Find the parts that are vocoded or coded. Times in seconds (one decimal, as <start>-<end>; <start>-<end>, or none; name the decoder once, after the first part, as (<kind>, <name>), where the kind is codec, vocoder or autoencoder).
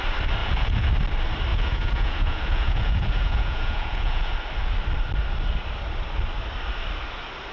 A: 0.4-0.9 (vocoder, Vocos); 1.5-4.3